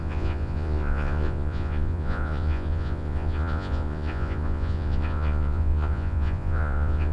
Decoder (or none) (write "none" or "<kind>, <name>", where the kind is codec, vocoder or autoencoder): vocoder, Vocos